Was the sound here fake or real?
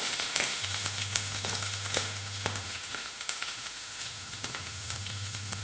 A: fake